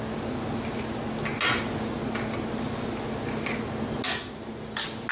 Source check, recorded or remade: recorded